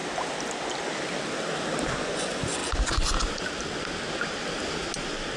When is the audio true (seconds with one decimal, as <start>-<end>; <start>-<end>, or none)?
0.0-2.0; 2.6-5.4